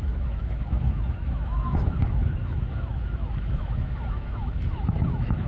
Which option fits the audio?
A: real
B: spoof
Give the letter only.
B